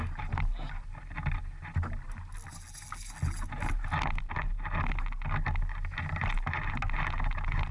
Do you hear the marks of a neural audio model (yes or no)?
no